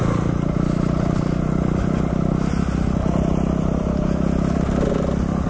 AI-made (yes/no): no